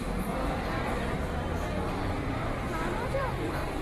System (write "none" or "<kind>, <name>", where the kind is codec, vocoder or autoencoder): vocoder, BigVGAN v2